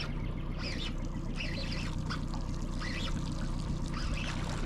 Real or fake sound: real